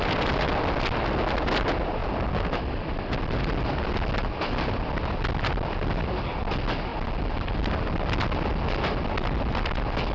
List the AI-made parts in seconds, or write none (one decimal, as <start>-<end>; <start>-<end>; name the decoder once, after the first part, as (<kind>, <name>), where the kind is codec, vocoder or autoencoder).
none